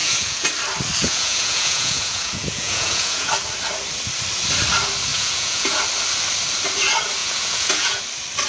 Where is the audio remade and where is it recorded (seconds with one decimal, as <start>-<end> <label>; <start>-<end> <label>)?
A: 0.0-0.5 remade; 0.5-1.0 recorded; 1.0-3.3 remade; 3.3-5.1 recorded; 5.1-5.8 remade; 5.8-7.2 recorded; 7.2-8.0 remade; 8.0-8.5 recorded